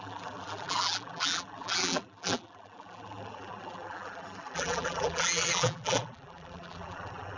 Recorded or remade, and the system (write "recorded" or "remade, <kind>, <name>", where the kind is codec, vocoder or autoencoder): remade, vocoder, BigVGAN v2